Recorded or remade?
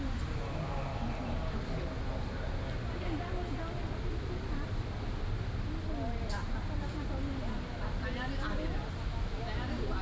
recorded